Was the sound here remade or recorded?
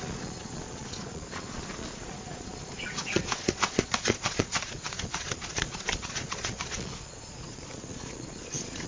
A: remade